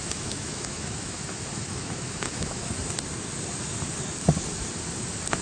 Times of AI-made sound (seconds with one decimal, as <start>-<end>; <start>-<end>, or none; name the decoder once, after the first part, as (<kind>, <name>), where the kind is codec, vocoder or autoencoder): 0.0-2.7 (autoencoder, DAC-VAE)